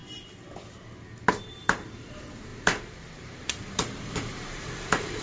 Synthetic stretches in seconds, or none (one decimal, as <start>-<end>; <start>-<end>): 1.3-5.2

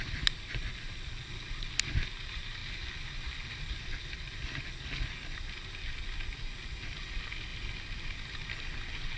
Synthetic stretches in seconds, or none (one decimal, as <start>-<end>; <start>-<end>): none